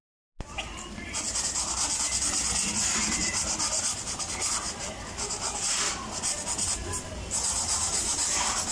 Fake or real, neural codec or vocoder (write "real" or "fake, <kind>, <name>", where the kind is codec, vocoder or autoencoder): real